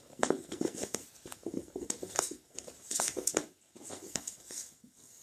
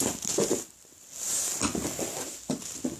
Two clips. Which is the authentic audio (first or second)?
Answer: second